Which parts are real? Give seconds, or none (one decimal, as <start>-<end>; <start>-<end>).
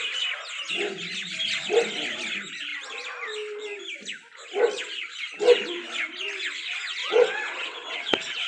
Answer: 0.0-7.0